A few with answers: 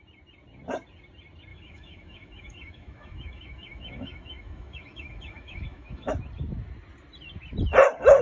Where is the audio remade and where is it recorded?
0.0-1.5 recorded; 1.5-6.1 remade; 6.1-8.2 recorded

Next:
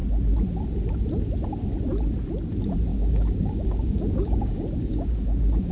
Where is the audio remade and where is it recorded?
0.0-2.9 recorded; 2.9-5.7 remade

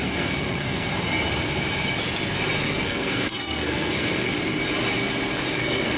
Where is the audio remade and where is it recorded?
0.0-0.9 remade; 0.9-2.6 recorded; 2.6-4.3 remade; 4.3-5.5 recorded; 5.5-6.0 remade

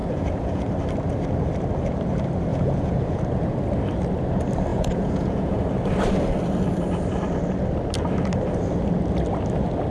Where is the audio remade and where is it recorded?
0.0-0.7 remade; 0.7-2.5 recorded; 2.5-3.2 remade; 3.2-4.7 recorded; 4.7-5.6 remade; 5.6-9.9 recorded

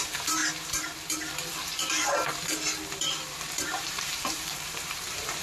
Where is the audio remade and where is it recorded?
0.0-0.4 remade; 0.4-3.6 recorded; 3.6-5.4 remade

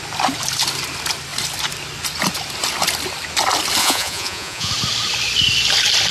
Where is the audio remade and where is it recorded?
0.0-3.8 recorded; 3.8-4.7 remade; 4.7-6.1 recorded